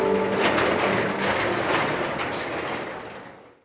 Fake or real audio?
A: real